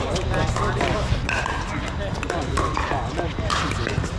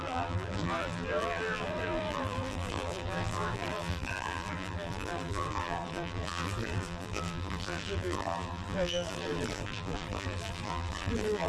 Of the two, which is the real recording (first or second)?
first